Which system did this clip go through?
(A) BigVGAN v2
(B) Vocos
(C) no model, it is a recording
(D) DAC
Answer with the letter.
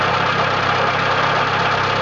C